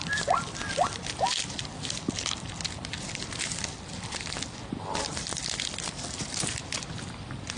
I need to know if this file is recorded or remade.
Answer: recorded